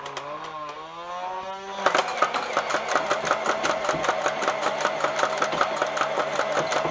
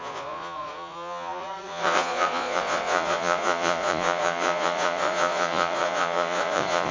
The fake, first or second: second